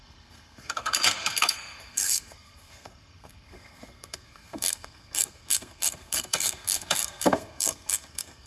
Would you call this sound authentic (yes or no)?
no